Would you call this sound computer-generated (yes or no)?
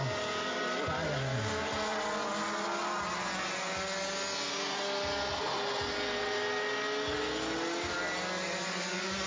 no